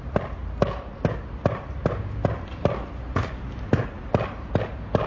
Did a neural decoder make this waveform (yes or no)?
no